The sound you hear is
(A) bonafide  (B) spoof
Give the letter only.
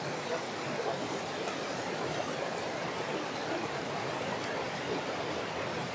A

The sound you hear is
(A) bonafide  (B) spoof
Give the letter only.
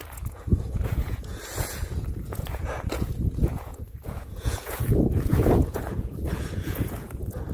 B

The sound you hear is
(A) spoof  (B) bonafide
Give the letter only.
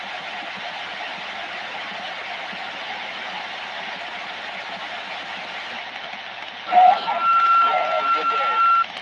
B